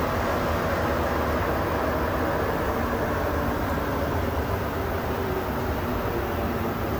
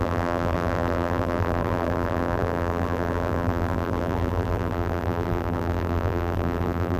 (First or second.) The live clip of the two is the first